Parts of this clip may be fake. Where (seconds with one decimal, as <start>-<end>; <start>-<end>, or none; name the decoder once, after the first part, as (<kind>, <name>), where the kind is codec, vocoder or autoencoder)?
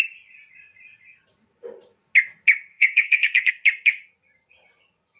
2.7-3.5 (codec, SNAC)